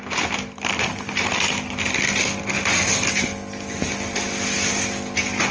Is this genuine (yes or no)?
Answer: yes